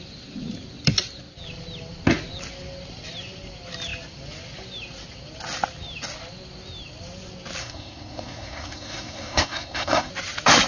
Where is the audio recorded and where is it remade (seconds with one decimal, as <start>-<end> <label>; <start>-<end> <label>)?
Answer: 0.0-7.6 recorded; 7.6-10.1 remade; 10.1-10.7 recorded